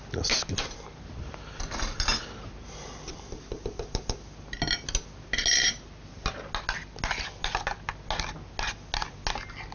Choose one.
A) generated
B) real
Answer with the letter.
B